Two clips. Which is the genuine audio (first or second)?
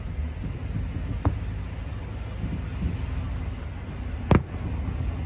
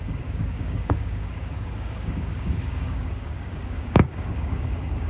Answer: first